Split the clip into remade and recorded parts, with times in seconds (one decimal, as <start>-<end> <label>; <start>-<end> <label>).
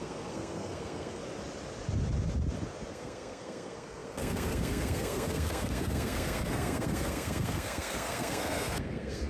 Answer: 0.0-1.2 remade; 1.2-2.9 recorded; 2.9-9.3 remade